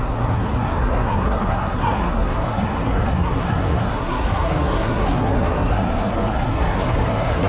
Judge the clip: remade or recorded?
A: remade